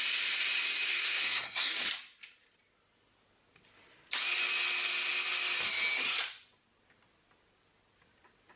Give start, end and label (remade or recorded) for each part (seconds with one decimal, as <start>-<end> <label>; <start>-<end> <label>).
0.0-0.9 recorded; 0.9-1.7 remade; 1.7-8.6 recorded